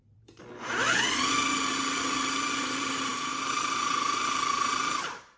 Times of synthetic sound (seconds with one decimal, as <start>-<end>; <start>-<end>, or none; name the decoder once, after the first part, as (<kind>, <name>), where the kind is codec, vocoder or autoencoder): 0.0-0.4 (vocoder, BigVGAN v2); 2.6-5.4